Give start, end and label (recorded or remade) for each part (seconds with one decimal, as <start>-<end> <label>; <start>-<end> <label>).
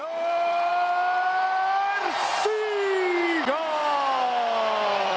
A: 0.0-0.7 remade; 0.7-3.8 recorded; 3.8-5.2 remade